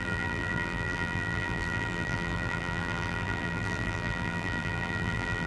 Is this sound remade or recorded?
remade